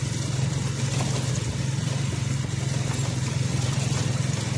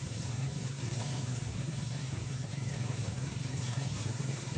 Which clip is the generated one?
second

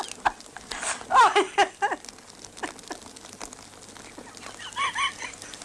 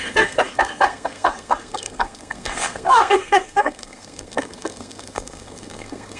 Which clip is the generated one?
second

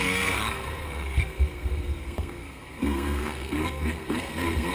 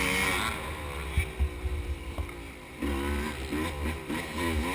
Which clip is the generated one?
first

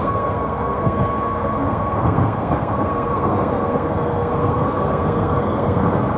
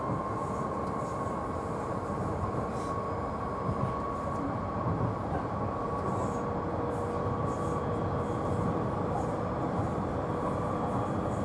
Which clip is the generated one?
first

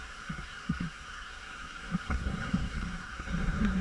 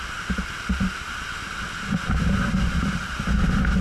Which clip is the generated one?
first